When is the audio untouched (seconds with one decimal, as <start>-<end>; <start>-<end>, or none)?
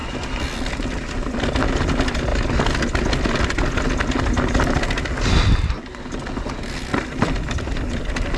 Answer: 0.0-2.3; 3.0-6.9; 8.0-8.4